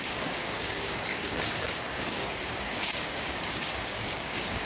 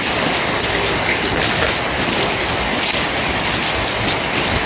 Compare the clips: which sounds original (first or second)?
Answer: second